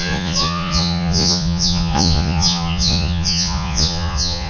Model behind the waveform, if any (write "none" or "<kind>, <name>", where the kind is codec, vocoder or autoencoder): vocoder, Vocos